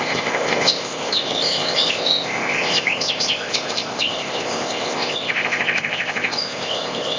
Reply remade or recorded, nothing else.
remade